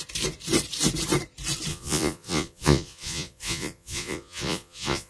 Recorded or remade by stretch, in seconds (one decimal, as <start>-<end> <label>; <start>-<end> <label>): 0.0-1.7 recorded; 1.7-5.1 remade